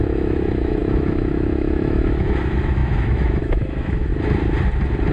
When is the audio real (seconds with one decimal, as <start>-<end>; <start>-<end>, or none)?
4.1-5.1